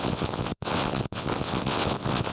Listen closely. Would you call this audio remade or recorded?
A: remade